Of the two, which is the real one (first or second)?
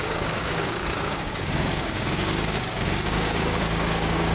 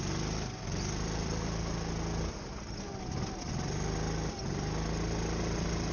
second